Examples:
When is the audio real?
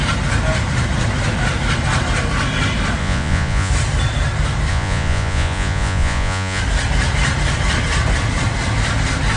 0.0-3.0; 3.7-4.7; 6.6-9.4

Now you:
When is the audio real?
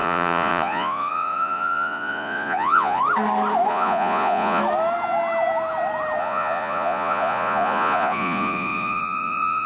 3.0-3.7; 4.6-6.2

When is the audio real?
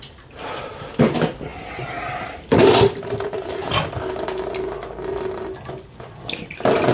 0.0-6.9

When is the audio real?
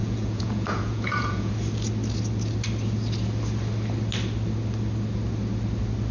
1.5-6.1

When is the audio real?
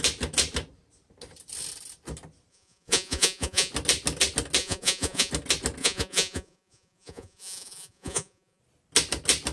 0.0-2.5; 3.7-4.6; 5.3-5.8; 8.6-9.5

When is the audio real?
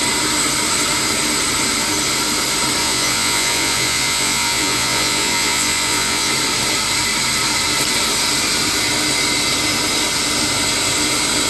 0.0-2.8; 6.3-11.5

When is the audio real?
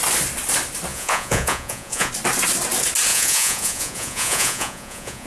0.0-0.9; 2.1-3.1